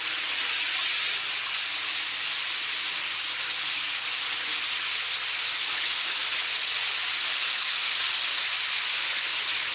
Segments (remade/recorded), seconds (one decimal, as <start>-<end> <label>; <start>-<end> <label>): 0.0-5.5 recorded; 5.5-6.2 remade; 6.2-7.3 recorded; 7.3-8.0 remade; 8.0-9.7 recorded